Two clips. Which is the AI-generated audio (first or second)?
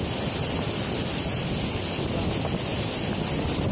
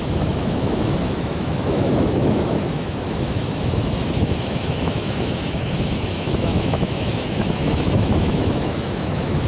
second